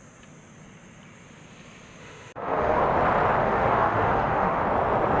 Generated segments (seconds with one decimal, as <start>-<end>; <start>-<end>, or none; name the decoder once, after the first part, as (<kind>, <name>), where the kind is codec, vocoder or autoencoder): 2.0-2.8 (autoencoder, DAC-VAE); 3.4-4.6

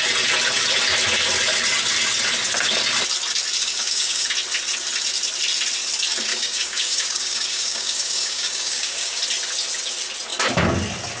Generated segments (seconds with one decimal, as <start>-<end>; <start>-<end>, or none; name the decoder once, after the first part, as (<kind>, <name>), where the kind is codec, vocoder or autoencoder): 3.6-4.3 (codec, DAC); 6.3-9.2